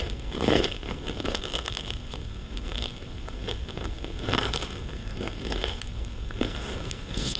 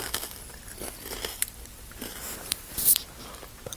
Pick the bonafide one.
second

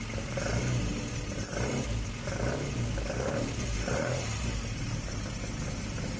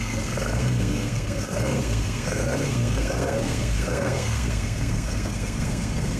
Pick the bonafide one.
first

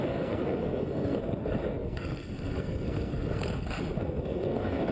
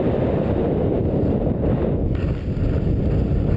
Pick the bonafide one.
second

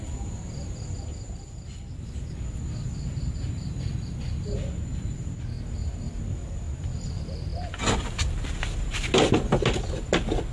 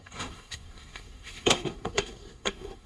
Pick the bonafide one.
first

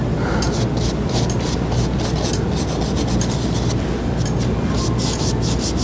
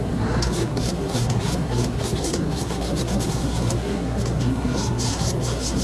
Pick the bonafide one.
first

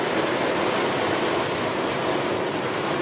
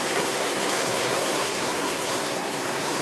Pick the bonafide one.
first